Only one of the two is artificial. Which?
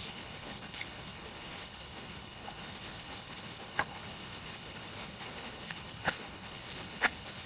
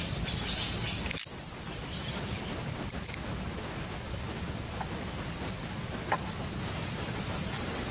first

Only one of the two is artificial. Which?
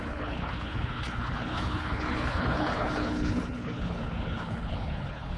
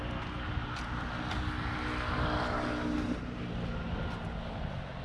first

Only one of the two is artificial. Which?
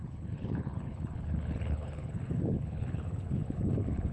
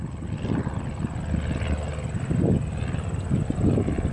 first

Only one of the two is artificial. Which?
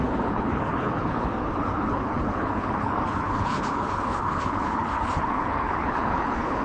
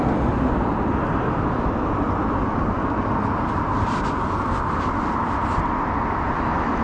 first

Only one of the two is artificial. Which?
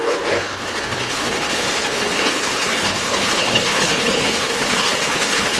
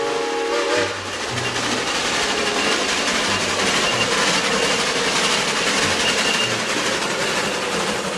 first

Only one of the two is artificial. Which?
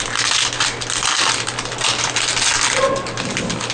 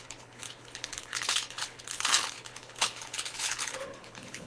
second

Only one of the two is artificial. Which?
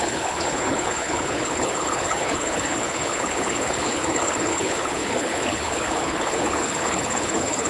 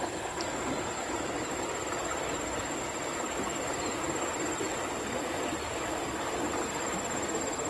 first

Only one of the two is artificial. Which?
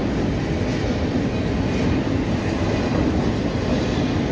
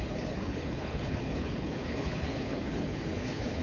second